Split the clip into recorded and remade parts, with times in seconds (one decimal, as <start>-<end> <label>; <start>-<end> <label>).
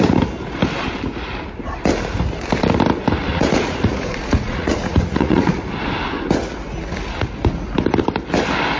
0.0-3.3 recorded; 3.3-5.6 remade; 5.6-8.8 recorded